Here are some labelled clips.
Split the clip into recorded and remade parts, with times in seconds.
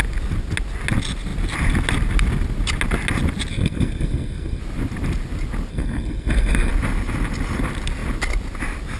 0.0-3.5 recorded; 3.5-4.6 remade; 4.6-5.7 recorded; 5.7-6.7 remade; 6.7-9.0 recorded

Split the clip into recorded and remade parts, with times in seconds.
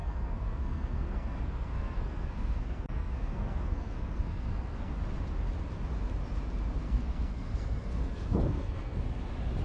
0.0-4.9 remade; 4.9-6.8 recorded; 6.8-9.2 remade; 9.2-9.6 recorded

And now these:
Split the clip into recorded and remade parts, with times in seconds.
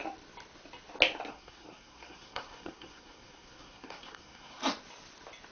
0.0-1.3 recorded; 1.3-4.6 remade; 4.6-5.5 recorded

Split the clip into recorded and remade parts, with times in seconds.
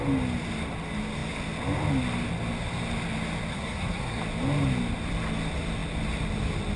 0.0-3.5 recorded; 3.5-4.2 remade; 4.2-6.8 recorded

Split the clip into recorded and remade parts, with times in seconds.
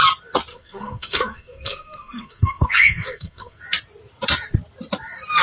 0.0-0.5 recorded; 0.5-3.6 remade; 3.6-5.4 recorded